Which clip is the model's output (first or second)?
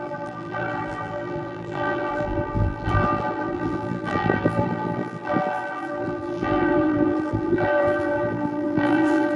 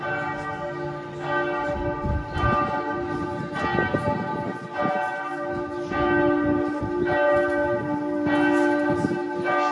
first